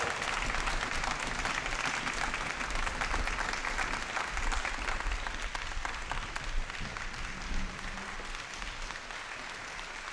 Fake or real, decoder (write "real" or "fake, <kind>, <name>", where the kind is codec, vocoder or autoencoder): real